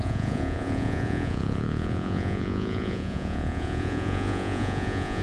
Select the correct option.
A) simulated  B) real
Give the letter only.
A